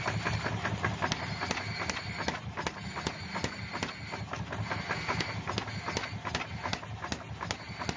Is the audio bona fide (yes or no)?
yes